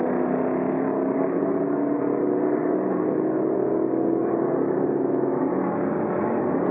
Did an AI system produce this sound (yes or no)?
no